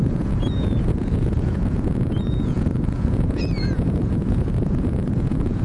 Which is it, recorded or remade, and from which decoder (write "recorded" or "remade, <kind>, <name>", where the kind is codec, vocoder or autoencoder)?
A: remade, vocoder, Vocos